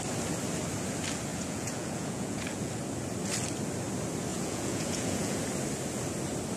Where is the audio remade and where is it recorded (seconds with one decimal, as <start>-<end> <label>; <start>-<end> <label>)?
0.0-1.3 recorded; 1.3-2.7 remade; 2.7-4.3 recorded; 4.3-5.4 remade; 5.4-6.6 recorded